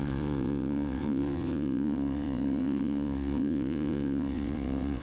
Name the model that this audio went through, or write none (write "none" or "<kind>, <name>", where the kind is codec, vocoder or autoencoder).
vocoder, WaveNeXt